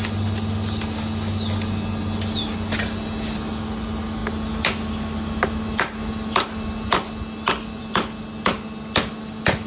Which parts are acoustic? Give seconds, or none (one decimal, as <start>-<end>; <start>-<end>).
0.0-9.7